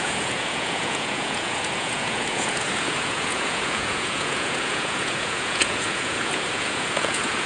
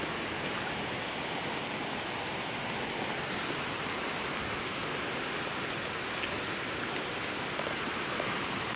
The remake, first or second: first